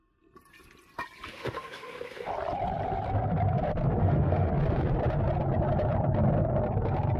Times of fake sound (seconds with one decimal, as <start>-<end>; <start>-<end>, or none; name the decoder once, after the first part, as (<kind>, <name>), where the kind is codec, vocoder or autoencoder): 1.3-2.3 (autoencoder, DAC-VAE); 4.0-4.5